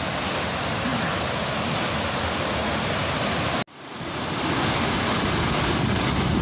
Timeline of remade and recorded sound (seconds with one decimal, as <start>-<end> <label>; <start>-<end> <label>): 0.0-6.4 recorded